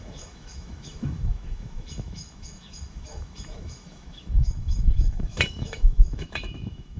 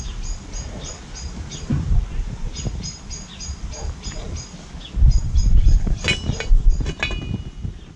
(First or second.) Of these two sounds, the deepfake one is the first